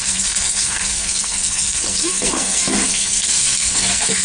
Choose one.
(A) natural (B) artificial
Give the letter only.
B